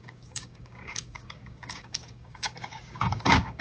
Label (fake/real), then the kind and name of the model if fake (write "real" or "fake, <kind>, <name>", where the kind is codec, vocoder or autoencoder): fake, codec, DAC